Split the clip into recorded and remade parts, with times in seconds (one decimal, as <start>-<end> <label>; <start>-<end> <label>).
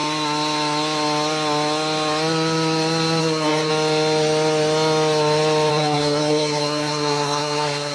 0.0-3.2 recorded; 3.2-3.7 remade; 3.7-5.7 recorded; 5.7-7.9 remade